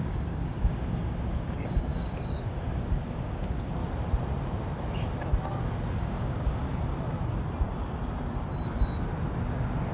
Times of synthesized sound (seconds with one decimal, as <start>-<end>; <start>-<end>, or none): 0.0-3.8; 5.9-6.6